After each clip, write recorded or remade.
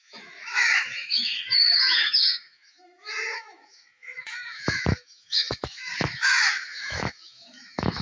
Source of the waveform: remade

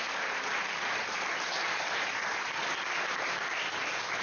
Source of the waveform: recorded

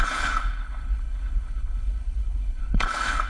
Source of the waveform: remade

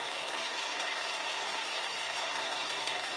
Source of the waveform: remade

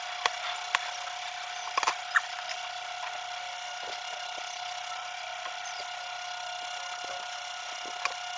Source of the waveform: recorded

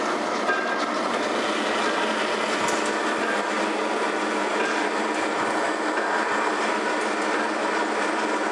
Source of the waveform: recorded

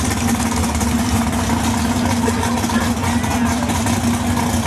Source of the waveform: recorded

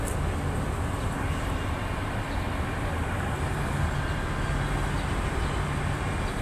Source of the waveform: recorded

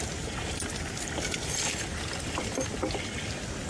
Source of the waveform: recorded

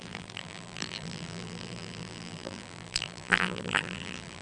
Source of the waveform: remade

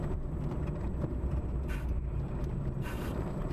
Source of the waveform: remade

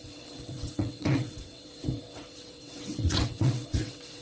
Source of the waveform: remade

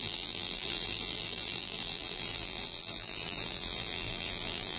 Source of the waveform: remade